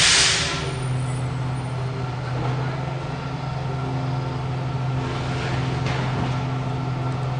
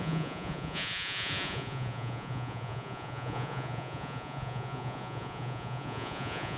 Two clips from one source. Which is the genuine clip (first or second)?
first